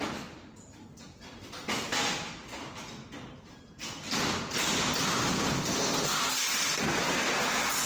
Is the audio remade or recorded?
recorded